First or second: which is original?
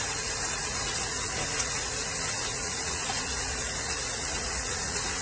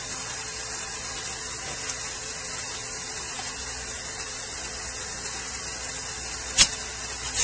second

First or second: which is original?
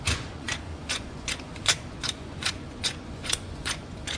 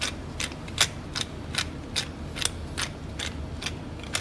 second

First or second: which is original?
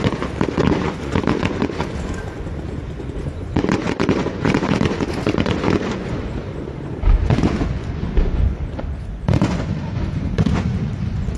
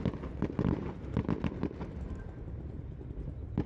second